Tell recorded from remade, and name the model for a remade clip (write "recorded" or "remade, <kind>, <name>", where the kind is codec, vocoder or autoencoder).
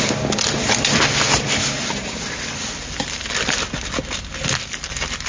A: recorded